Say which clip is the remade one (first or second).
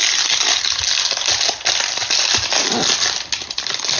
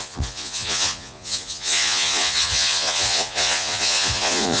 second